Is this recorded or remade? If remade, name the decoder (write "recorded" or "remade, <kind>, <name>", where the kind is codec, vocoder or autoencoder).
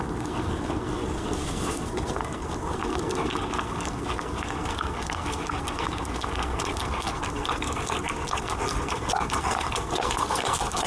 remade, codec, SNAC